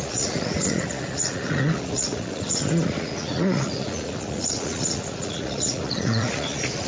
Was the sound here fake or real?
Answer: fake